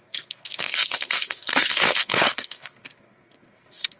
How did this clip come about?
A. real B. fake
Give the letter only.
B